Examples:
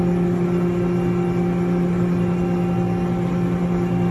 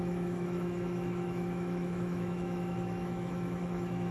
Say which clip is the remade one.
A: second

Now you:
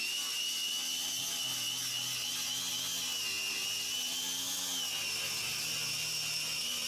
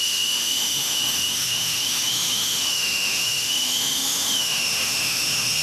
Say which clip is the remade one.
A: second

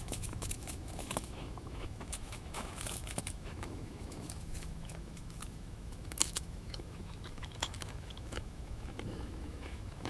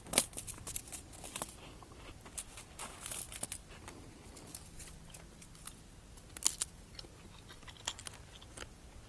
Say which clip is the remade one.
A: first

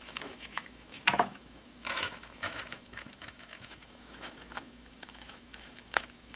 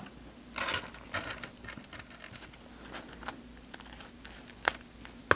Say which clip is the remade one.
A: first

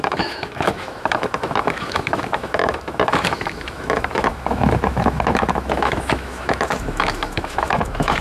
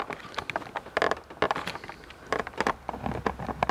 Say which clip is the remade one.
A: first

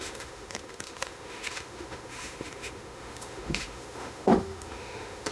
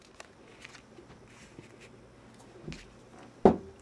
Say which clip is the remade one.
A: first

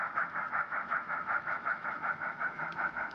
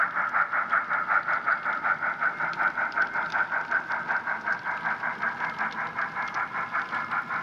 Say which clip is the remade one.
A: first